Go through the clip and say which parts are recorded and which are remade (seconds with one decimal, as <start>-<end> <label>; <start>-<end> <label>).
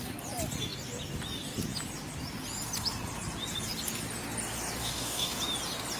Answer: 0.0-4.8 recorded; 4.8-5.4 remade; 5.4-6.0 recorded